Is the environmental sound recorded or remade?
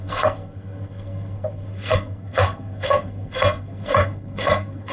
remade